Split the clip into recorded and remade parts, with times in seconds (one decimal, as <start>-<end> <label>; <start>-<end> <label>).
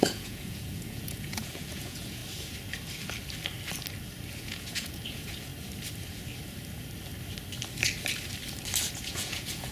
0.0-2.2 remade; 2.2-4.4 recorded; 4.4-5.5 remade; 5.5-8.9 recorded; 8.9-9.7 remade